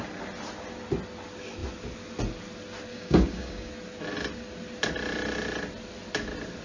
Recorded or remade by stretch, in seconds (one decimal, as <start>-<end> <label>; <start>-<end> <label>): 0.0-2.9 recorded; 2.9-3.7 remade; 3.7-6.6 recorded